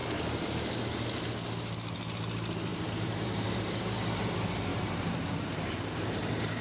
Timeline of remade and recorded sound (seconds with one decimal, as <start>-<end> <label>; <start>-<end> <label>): 0.0-2.7 recorded; 2.7-4.3 remade; 4.3-4.7 recorded; 4.7-6.6 remade